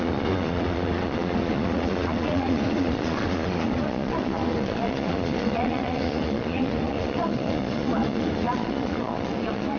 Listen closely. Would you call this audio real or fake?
fake